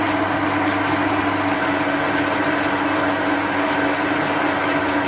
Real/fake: real